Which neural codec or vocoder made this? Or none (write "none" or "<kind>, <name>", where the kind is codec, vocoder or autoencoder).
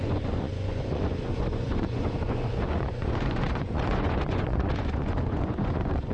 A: vocoder, Vocos